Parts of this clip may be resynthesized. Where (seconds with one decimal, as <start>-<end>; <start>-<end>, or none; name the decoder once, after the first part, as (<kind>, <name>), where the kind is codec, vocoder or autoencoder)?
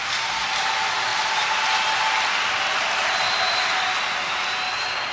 none